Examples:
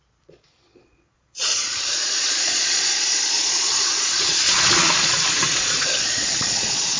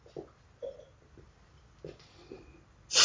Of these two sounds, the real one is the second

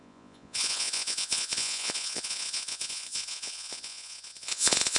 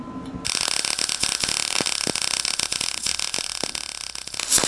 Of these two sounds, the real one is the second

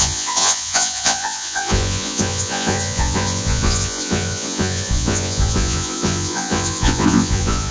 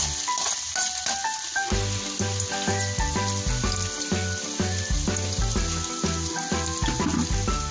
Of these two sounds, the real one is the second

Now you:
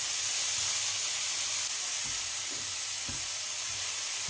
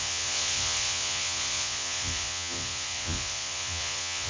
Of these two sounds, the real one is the first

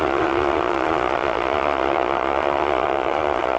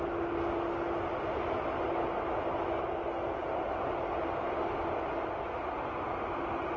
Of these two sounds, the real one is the second